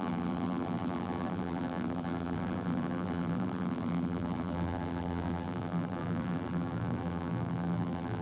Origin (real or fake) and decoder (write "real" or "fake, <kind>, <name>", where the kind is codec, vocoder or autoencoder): fake, vocoder, BigVGAN v2